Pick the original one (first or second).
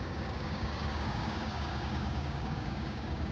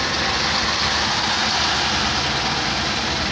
second